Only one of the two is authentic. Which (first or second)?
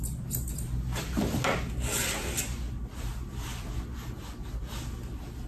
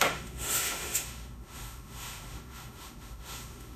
first